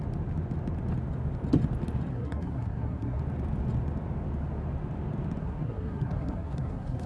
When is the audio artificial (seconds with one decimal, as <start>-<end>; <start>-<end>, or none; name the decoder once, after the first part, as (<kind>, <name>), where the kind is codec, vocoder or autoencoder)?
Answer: 2.1-3.2 (codec, SNAC); 5.4-7.1